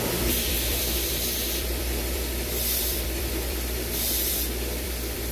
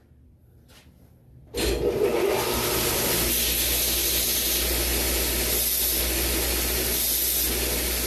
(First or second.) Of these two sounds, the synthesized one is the first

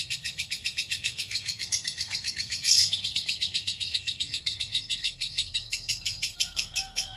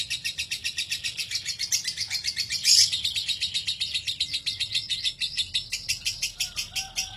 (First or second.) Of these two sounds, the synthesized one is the first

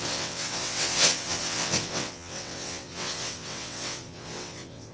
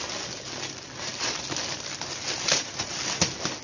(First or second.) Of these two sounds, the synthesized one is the first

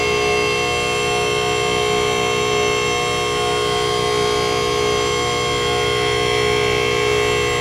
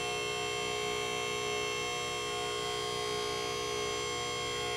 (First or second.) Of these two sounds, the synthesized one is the first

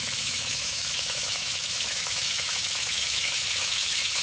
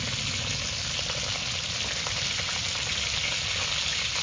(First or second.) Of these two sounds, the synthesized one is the first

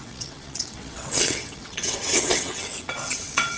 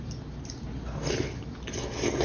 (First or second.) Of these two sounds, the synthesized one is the first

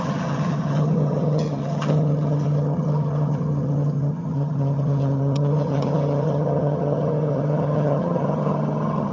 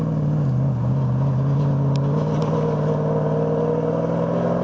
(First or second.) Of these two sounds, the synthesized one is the first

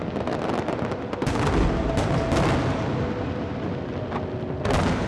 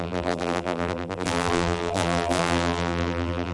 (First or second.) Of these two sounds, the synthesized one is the second